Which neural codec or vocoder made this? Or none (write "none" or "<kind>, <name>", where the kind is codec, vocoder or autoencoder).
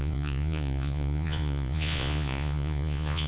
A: vocoder, Vocos